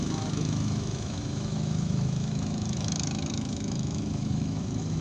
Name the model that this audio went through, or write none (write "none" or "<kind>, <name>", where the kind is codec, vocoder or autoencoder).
autoencoder, DAC-VAE